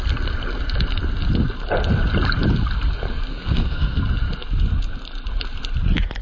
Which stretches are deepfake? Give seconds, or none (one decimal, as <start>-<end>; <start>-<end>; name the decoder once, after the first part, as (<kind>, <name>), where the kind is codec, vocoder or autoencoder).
3.3-4.0 (codec, SNAC)